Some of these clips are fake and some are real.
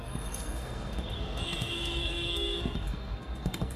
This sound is fake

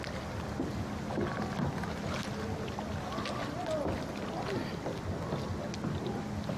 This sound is real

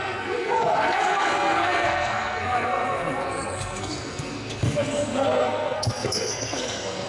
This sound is fake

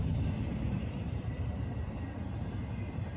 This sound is real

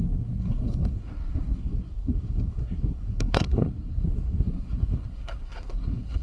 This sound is fake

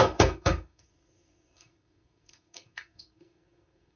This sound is fake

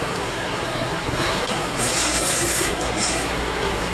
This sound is fake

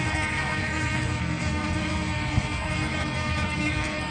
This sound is fake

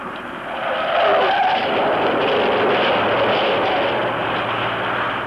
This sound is real